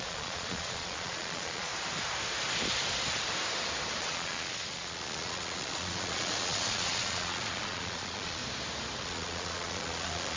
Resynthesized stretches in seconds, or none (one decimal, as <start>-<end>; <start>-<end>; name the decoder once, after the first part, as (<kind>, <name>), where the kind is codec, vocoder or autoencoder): 0.0-1.7 (vocoder, Vocos); 4.0-8.4; 9.0-10.4